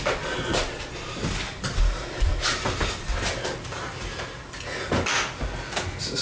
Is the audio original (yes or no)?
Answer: yes